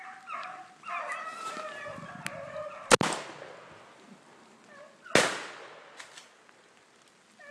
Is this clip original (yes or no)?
yes